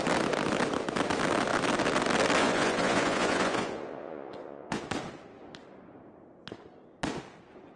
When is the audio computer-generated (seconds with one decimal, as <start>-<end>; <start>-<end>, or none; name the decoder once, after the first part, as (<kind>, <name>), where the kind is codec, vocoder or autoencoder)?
2.4-4.8 (vocoder, Vocos)